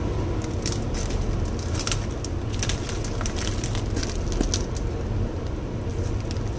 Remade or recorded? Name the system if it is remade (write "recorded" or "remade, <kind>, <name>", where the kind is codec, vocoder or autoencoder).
recorded